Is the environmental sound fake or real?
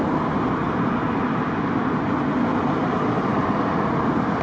real